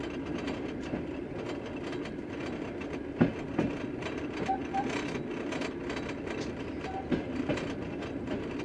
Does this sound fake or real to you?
real